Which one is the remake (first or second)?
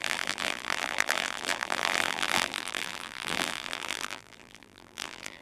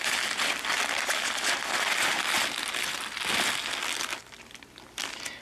first